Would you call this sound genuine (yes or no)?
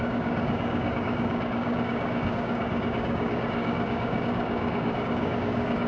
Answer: no